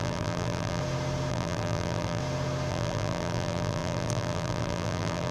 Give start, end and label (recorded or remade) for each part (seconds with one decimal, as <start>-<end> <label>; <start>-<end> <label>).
0.0-0.8 remade; 0.8-1.3 recorded; 1.3-2.2 remade; 2.2-2.7 recorded; 2.7-5.3 remade